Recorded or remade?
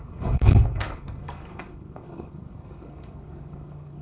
remade